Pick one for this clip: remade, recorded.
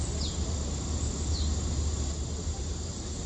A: recorded